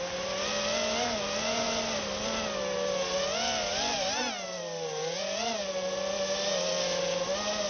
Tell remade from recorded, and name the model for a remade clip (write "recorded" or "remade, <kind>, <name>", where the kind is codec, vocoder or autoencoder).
recorded